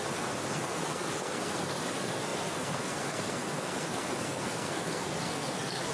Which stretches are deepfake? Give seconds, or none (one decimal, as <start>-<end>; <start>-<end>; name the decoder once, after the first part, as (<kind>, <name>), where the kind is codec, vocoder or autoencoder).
0.0-5.9 (codec, SNAC)